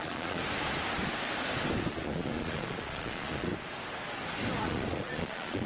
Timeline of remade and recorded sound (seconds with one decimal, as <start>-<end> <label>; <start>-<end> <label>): 0.0-0.4 remade; 0.4-1.9 recorded; 1.9-3.5 remade; 3.5-4.6 recorded; 4.6-5.7 remade